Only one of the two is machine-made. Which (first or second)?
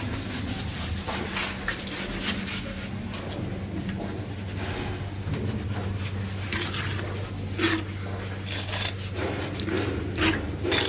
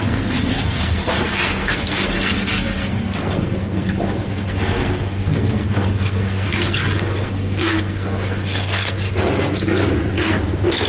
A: second